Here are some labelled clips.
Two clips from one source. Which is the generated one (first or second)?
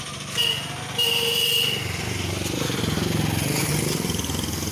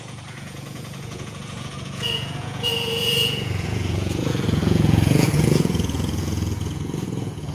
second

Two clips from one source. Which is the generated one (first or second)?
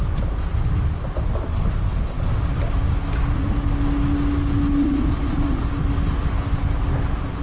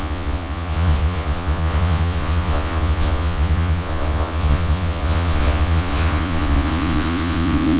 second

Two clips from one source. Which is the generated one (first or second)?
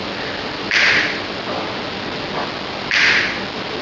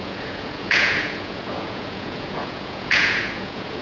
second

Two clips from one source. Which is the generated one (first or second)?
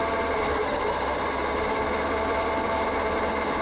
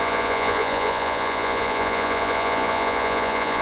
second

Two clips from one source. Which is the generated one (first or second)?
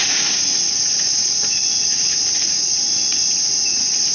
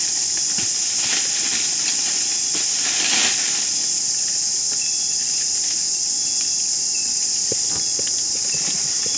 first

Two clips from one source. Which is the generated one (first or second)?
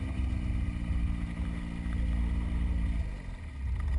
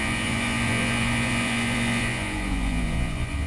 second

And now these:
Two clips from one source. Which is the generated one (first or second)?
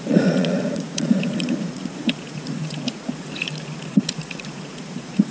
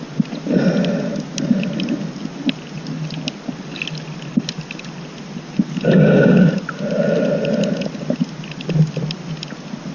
first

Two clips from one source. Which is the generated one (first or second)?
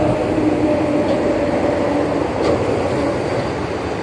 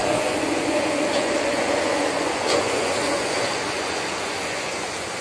second